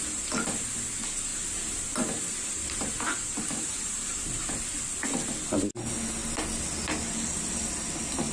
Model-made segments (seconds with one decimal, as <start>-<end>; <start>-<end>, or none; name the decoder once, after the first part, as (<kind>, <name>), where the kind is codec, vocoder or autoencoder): 1.3-4.8 (vocoder, BigVGAN v2)